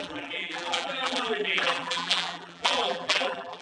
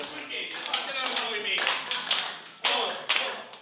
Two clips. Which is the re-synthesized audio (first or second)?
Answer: first